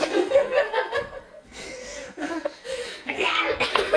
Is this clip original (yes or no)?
no